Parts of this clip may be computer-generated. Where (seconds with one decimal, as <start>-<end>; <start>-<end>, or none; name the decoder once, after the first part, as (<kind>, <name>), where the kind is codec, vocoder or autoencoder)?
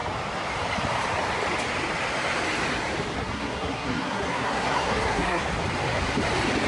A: 3.2-5.4 (codec, SNAC)